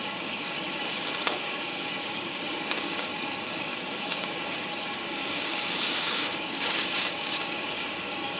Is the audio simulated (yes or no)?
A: yes